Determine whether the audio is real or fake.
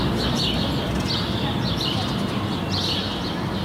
real